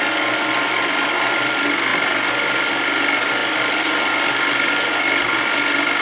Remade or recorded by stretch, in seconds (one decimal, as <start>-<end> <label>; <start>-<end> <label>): 0.0-3.4 recorded; 3.4-4.7 remade; 4.7-6.0 recorded